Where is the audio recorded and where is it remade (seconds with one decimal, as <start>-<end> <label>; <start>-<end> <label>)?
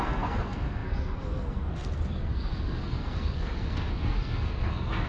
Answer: 0.0-5.1 remade